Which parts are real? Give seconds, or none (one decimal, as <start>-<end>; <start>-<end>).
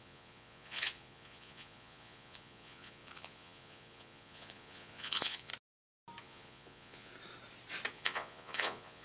5.5-6.2; 7.1-7.9